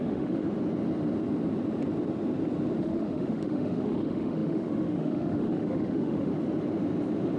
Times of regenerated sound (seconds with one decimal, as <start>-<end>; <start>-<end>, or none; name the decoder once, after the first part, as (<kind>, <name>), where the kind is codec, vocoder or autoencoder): 0.0-0.4 (autoencoder, DAC-VAE); 2.8-6.3